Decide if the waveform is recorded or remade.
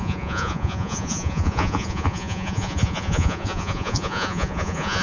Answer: remade